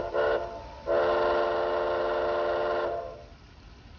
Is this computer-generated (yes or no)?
no